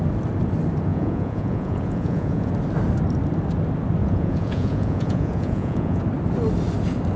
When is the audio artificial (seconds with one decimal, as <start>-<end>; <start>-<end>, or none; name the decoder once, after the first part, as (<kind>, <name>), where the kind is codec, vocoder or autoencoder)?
0.9-2.5 (vocoder, Vocos); 4.0-6.0